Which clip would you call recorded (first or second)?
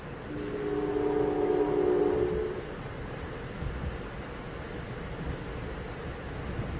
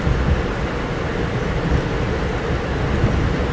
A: first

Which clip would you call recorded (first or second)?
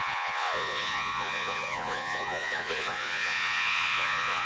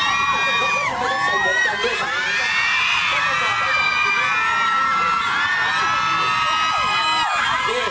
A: second